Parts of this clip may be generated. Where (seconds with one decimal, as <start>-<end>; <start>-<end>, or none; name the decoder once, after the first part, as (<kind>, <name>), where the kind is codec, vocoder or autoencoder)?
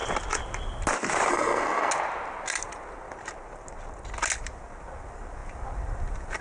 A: 1.3-1.9 (codec, SNAC)